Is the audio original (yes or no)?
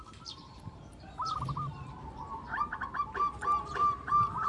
no